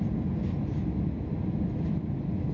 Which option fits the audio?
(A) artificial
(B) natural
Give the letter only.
B